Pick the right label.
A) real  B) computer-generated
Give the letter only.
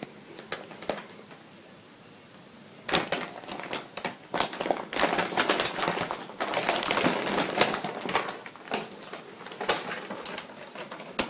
A